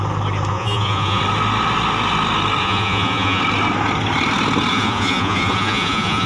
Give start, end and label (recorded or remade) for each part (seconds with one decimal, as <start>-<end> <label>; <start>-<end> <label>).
0.0-0.5 recorded; 0.5-1.2 remade; 1.2-2.6 recorded; 2.6-3.4 remade; 3.4-4.7 recorded; 4.7-6.3 remade